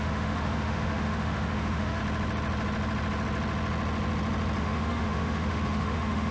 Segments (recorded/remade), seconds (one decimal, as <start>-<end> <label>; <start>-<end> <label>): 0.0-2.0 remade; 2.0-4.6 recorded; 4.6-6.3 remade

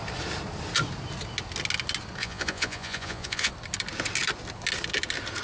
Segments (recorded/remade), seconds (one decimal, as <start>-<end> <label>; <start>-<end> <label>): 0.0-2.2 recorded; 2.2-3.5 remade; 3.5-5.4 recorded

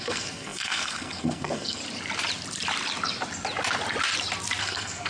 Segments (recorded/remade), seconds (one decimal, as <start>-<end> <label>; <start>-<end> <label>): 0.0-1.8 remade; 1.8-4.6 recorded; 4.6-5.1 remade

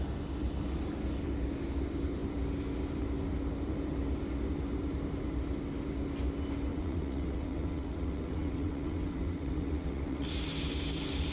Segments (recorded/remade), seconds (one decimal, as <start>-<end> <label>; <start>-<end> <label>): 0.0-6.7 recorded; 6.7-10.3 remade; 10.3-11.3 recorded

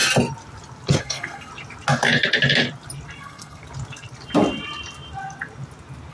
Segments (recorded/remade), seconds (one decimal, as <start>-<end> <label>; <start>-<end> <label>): 0.0-1.0 recorded; 1.0-1.5 remade; 1.5-3.2 recorded; 3.2-3.6 remade; 3.6-6.1 recorded